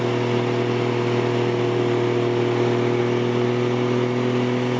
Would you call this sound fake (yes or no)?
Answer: no